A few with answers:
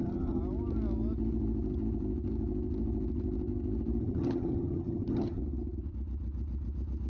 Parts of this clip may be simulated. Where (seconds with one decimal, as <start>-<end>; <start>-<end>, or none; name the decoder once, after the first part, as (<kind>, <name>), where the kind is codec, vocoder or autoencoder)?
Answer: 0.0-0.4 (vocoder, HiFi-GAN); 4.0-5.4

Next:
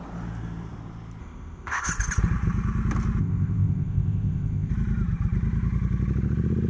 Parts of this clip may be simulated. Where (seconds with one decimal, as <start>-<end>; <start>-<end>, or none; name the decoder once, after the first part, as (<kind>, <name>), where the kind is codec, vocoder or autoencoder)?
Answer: 1.2-1.9 (codec, ZipCodec); 3.2-4.7

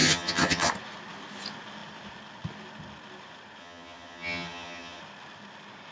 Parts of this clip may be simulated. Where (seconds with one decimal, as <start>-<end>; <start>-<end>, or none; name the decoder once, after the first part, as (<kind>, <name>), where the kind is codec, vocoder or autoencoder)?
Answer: 0.0-0.7 (vocoder, HiFi-GAN); 3.6-5.0

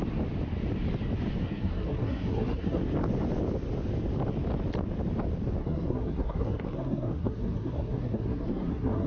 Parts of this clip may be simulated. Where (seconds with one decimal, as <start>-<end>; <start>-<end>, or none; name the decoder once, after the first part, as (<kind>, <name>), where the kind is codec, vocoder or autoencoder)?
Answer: 1.4-2.8 (codec, SNAC); 5.6-9.1

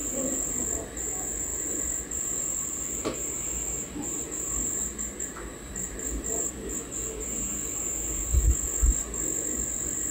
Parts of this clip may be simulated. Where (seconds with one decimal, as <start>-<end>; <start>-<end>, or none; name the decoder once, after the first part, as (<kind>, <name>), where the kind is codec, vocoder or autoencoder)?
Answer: 1.5-6.5 (vocoder, BigVGAN v2)

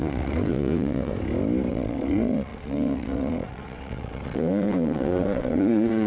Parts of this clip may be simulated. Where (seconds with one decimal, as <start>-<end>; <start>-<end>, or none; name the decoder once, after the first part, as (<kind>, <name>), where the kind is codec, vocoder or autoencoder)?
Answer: 0.0-1.1 (vocoder, WaveNeXt); 1.7-6.1

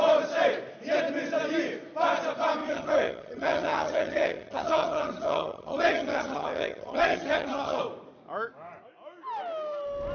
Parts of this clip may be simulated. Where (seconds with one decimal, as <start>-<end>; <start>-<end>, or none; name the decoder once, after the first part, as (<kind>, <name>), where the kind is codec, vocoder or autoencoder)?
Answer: 2.6-7.8 (vocoder, HiFi-GAN)